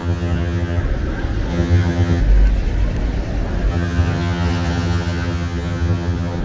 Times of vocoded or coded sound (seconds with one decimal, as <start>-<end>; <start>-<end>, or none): 0.0-0.8; 1.5-2.2; 3.7-6.4